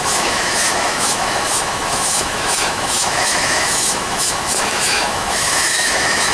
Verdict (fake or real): fake